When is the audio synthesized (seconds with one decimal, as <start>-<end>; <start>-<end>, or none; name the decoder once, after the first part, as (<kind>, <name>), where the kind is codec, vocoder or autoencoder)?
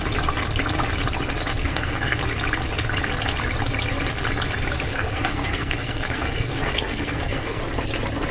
1.6-2.2 (codec, SNAC); 4.9-7.6